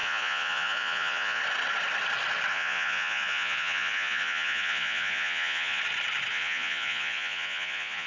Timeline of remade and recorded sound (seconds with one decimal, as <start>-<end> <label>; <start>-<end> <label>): 0.0-1.4 remade; 1.4-2.5 recorded; 2.5-5.8 remade; 5.8-6.3 recorded; 6.3-8.1 remade